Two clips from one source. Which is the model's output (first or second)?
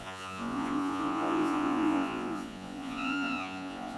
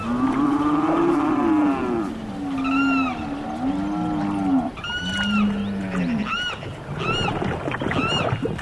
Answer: first